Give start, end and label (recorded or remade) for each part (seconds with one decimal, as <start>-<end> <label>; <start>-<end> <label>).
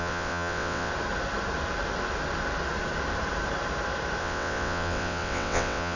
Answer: 0.0-0.9 remade; 0.9-4.2 recorded; 4.2-6.0 remade